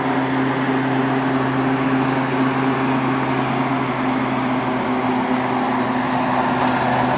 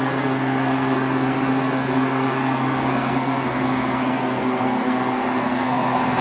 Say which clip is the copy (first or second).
second